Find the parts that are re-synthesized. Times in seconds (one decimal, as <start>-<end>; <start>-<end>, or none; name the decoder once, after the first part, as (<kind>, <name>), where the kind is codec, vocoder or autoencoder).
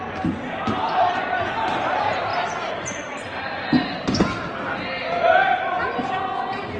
none